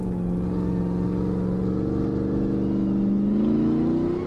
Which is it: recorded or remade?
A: recorded